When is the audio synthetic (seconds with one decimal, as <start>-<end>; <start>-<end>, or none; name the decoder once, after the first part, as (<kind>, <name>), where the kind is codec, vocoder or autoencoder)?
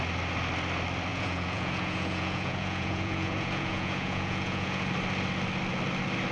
1.1-4.9 (vocoder, Vocos)